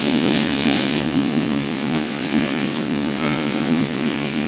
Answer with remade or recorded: remade